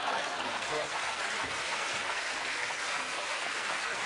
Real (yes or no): no